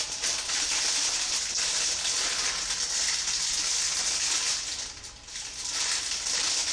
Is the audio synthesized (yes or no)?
no